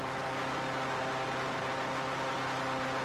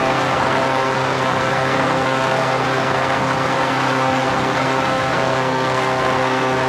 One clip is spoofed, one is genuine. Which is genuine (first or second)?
first